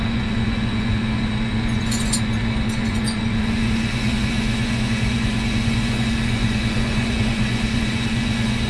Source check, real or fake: fake